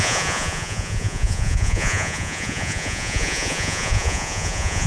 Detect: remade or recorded remade